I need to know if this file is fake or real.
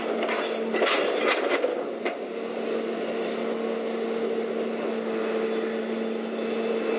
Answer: real